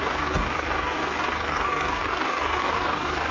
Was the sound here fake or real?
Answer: fake